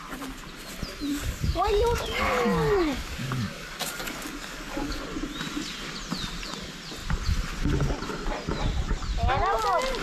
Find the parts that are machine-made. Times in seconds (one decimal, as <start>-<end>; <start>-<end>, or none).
1.1-5.0